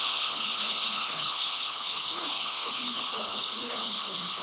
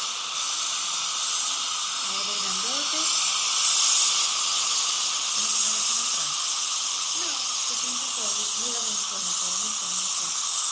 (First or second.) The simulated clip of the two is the first